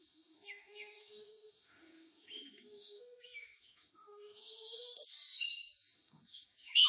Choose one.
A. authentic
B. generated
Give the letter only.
B